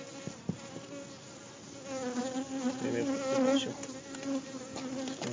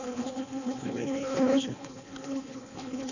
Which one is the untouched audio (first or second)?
first